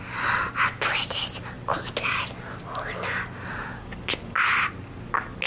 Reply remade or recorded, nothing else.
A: recorded